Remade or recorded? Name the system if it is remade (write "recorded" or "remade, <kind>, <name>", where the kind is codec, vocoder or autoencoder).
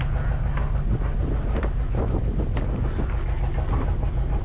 recorded